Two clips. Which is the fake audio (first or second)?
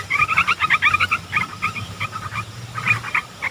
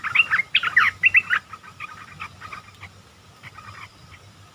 first